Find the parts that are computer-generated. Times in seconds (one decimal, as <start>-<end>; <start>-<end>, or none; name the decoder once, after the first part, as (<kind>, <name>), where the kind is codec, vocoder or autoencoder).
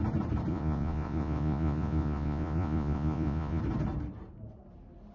0.5-3.6 (vocoder, Vocos)